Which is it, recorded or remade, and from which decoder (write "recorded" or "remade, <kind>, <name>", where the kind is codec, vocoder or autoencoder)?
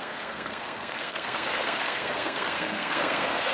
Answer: remade, codec, SNAC